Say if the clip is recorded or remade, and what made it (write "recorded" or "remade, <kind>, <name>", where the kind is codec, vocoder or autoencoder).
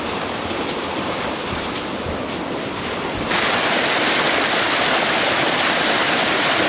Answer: recorded